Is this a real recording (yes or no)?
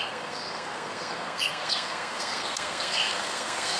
no